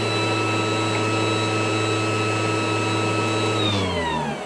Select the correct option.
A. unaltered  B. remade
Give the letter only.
A